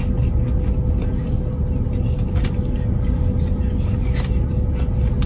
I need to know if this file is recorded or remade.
recorded